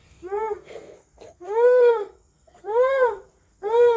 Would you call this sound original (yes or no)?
no